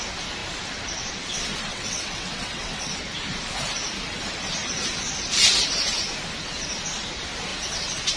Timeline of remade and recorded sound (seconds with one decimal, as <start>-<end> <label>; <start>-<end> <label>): 0.0-1.7 recorded; 1.7-2.9 remade; 2.9-8.2 recorded